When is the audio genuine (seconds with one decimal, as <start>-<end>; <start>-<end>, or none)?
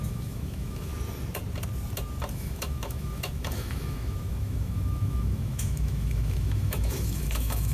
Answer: 0.9-2.3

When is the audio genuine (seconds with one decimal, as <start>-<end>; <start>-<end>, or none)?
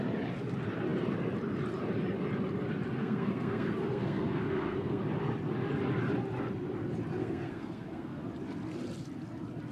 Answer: 0.0-3.0; 5.0-7.2; 8.2-9.7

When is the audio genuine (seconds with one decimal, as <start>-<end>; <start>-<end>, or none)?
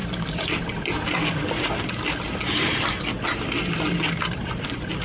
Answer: 0.0-5.0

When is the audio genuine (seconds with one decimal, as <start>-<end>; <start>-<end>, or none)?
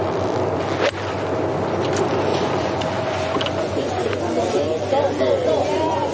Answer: 0.0-2.3; 4.2-5.4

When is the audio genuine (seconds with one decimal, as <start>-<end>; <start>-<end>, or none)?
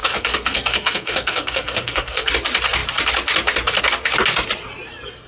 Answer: 2.3-5.3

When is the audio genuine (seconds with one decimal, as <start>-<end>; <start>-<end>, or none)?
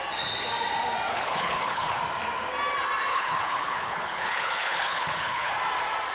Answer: 0.0-1.1; 2.0-3.1; 5.5-6.1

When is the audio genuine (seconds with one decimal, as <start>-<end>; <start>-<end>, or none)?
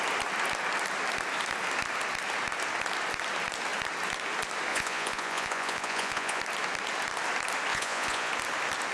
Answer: 0.0-4.7; 6.4-7.7; 8.3-8.9